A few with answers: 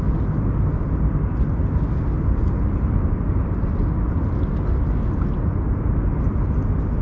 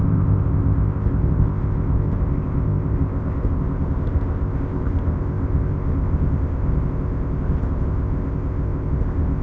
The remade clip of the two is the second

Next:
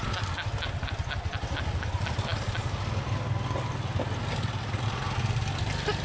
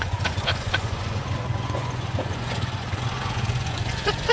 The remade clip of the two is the second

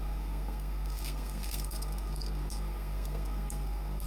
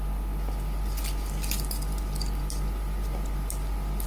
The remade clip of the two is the first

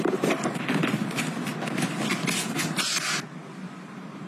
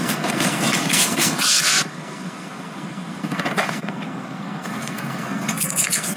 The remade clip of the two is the second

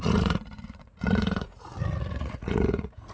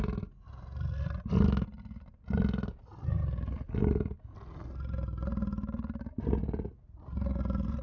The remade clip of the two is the first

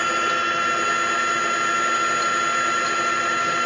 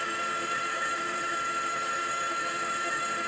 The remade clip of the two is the second